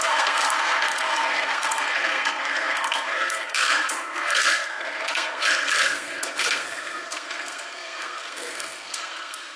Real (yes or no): no